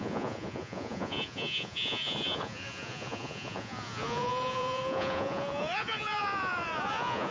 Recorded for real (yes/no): no